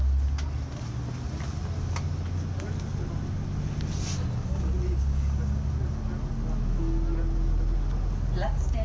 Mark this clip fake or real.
real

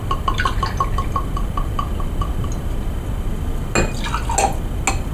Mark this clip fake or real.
real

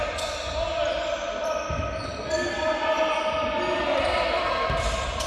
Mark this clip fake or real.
real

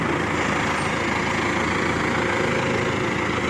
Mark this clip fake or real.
real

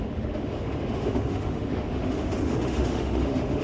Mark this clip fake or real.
fake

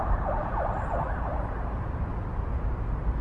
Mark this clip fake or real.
real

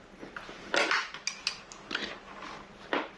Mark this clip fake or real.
real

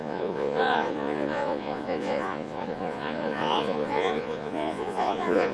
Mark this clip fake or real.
fake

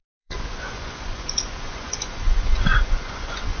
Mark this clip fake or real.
fake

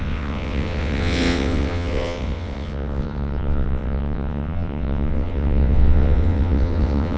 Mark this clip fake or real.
fake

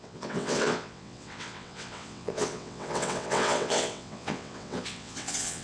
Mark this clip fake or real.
fake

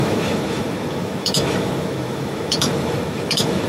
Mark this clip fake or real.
fake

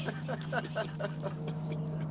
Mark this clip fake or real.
real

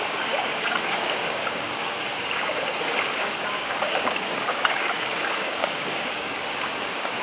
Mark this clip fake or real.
fake